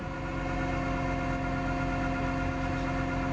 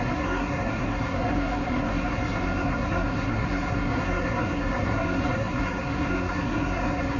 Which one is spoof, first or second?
second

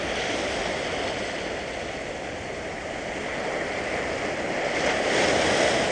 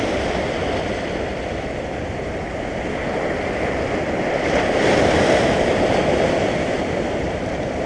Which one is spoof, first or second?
second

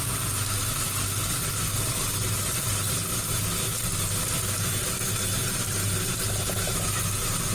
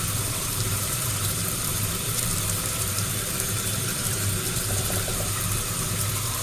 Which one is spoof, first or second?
second